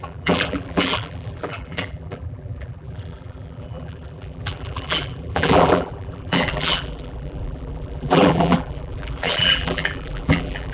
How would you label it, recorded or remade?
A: remade